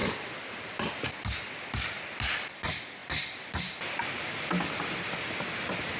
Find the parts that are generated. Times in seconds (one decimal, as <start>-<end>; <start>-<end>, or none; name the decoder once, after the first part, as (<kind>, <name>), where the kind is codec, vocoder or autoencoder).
none